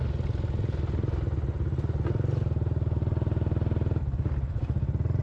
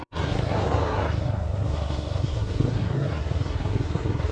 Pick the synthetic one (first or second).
second